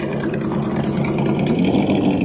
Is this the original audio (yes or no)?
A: yes